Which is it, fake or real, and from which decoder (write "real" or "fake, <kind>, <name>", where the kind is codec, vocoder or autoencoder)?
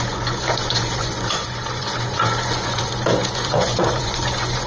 fake, vocoder, Vocos